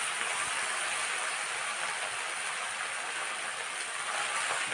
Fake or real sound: real